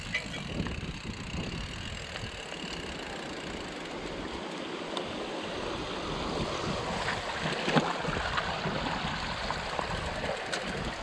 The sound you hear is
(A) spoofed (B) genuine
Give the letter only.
B